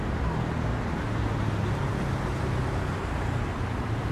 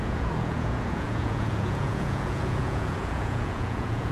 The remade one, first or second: second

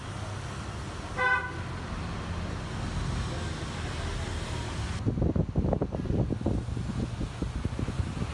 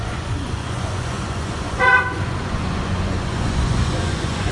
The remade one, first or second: second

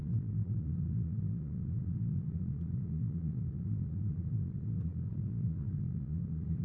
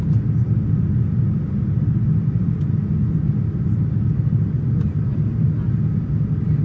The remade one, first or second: first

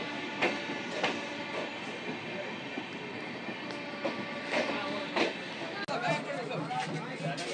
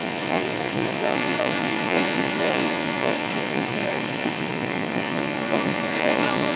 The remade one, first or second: second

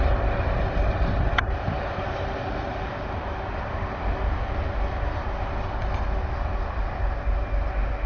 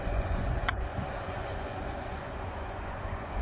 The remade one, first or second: second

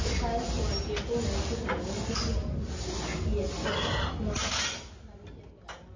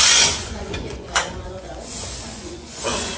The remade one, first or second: second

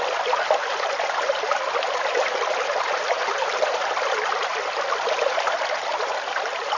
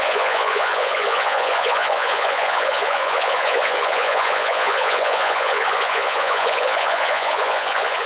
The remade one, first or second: second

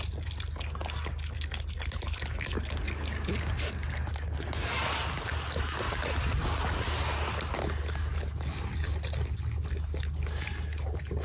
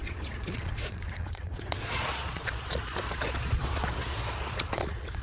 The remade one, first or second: second